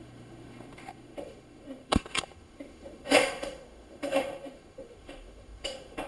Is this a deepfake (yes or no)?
yes